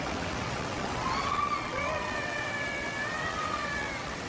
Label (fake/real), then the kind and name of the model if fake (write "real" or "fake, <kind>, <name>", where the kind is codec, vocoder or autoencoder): fake, vocoder, WaveNeXt